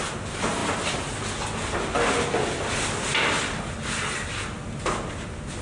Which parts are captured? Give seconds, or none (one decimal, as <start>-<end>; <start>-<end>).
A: 0.0-5.6